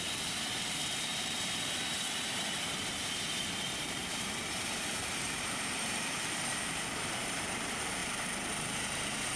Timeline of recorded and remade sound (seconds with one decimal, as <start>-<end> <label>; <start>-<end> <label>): 0.0-8.0 remade; 8.0-8.5 recorded; 8.5-9.4 remade